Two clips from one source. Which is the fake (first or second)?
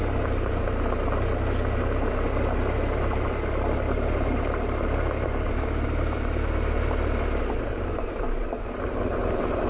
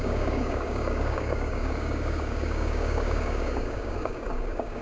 second